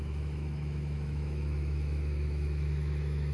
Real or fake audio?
fake